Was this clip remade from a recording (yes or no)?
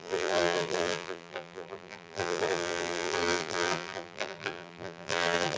yes